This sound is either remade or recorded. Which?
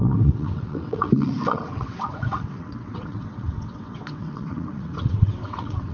remade